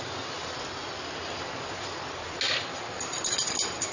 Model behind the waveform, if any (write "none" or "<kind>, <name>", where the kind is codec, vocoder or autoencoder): none